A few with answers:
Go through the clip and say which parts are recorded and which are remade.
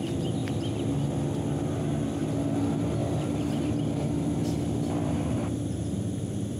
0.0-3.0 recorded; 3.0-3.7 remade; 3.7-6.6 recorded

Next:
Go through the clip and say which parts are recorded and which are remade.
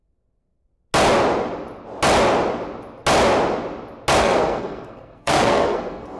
0.0-0.7 remade; 0.7-4.2 recorded; 4.2-6.2 remade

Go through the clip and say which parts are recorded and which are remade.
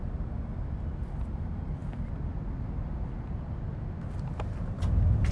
0.0-5.3 recorded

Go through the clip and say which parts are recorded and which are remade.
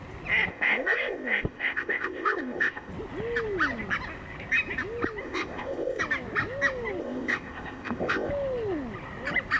0.0-0.5 recorded; 0.5-2.9 remade; 2.9-5.2 recorded; 5.2-6.0 remade; 6.0-7.0 recorded; 7.0-8.3 remade; 8.3-9.6 recorded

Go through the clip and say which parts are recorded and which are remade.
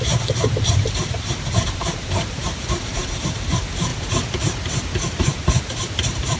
0.0-3.9 remade; 3.9-5.2 recorded; 5.2-6.4 remade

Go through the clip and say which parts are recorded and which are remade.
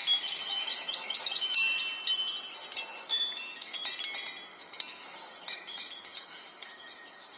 0.0-0.4 recorded; 0.4-1.8 remade; 1.8-2.9 recorded; 2.9-3.9 remade; 3.9-4.5 recorded; 4.5-7.4 remade